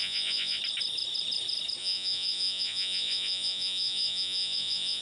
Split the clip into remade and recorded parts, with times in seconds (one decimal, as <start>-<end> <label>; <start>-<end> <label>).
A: 0.0-0.6 remade; 0.6-1.8 recorded; 1.8-5.0 remade